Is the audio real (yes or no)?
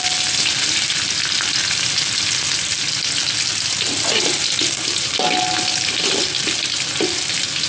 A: yes